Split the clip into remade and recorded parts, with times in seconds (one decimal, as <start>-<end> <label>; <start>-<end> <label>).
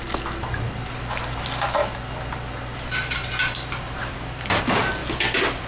0.0-1.8 recorded; 1.8-4.6 remade; 4.6-5.0 recorded; 5.0-5.7 remade